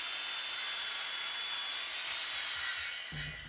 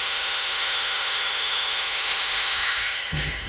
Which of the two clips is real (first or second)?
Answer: first